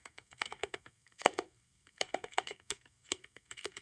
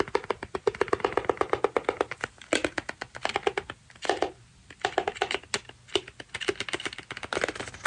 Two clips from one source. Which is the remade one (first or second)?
first